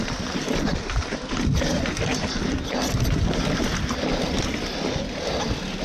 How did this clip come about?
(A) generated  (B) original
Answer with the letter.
B